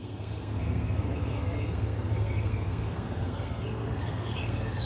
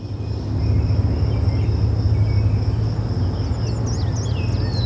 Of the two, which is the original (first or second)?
second